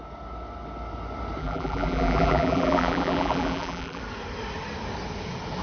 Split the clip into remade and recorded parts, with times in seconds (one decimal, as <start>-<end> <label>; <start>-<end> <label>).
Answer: 0.0-1.4 recorded; 1.4-4.0 remade; 4.0-5.6 recorded